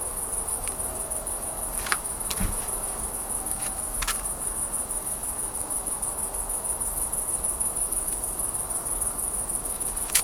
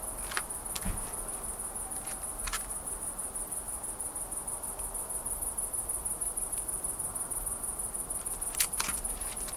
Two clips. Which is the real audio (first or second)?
second